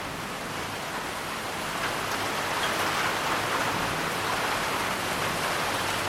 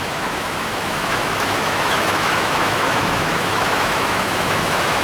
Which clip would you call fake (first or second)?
second